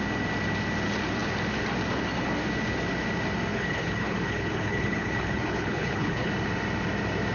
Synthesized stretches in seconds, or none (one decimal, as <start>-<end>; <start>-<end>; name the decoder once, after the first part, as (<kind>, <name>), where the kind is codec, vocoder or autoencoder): 3.5-6.3 (codec, HILCodec)